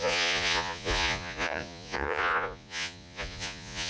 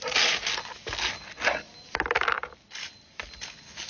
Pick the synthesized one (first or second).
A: first